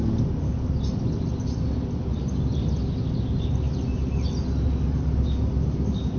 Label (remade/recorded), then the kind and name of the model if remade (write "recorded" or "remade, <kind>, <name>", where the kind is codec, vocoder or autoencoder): recorded